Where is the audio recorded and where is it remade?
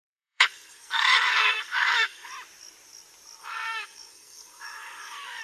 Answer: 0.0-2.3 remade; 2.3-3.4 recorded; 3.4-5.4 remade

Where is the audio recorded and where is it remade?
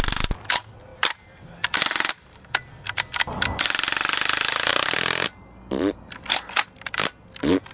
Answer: 0.0-7.7 recorded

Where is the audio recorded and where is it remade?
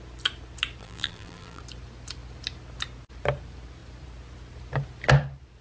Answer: 0.0-0.8 recorded; 0.8-1.6 remade; 1.6-5.6 recorded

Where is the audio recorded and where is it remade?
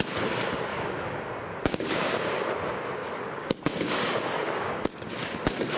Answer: 0.0-0.7 recorded; 0.7-2.5 remade; 2.5-3.0 recorded; 3.0-5.1 remade; 5.1-5.8 recorded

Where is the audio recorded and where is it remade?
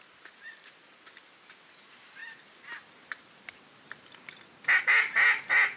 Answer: 0.0-5.8 recorded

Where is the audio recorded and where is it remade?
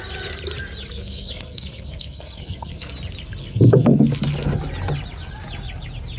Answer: 0.0-0.9 recorded; 0.9-2.9 remade; 2.9-3.4 recorded; 3.4-4.0 remade; 4.0-6.2 recorded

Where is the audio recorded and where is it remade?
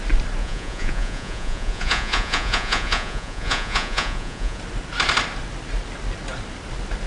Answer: 0.0-0.4 recorded; 0.4-4.6 remade; 4.6-7.1 recorded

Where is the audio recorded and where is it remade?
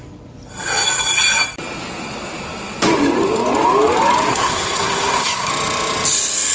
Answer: 0.0-4.3 recorded; 4.3-5.5 remade; 5.5-6.5 recorded